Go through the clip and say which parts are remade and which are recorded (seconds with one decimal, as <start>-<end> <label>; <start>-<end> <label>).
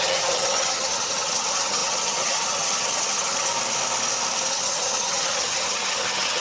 0.0-3.5 remade; 3.5-4.5 recorded; 4.5-6.4 remade